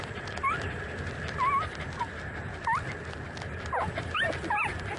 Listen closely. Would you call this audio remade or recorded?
recorded